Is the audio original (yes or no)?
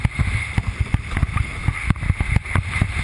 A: yes